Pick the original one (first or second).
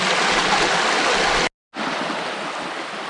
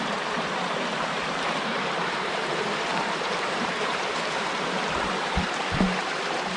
first